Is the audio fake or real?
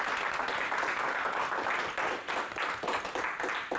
real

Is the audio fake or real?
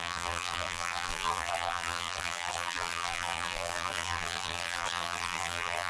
fake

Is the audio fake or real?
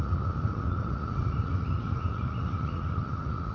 fake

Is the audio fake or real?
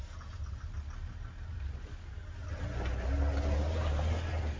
real